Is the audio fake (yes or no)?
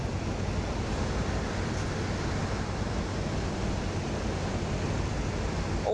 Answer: no